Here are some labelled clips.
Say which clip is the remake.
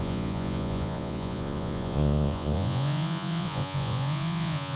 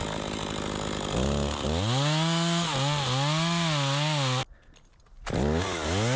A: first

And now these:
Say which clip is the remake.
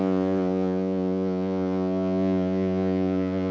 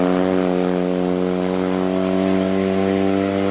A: first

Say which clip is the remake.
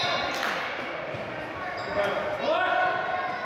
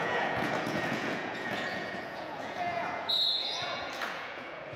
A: second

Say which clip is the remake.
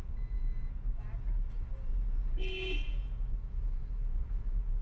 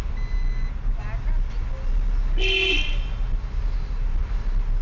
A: first